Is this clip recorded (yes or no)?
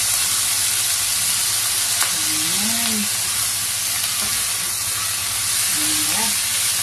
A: yes